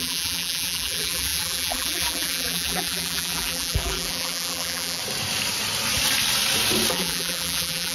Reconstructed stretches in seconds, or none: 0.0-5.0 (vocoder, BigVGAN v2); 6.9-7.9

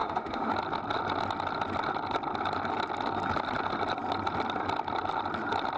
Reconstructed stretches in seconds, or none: 0.0-0.5 (autoencoder, DAC-VAE)

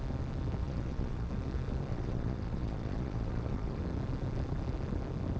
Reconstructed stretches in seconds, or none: 0.6-1.3 (vocoder, Vocos); 1.9-3.8

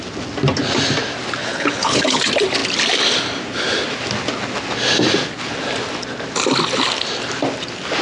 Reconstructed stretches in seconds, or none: 1.4-2.2 (codec, HILCodec)

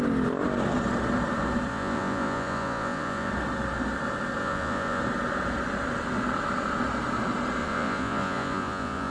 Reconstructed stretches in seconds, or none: 1.7-3.3 (vocoder, Vocos); 4.4-5.0; 7.6-9.1

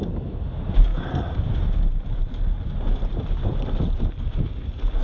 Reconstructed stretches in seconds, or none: none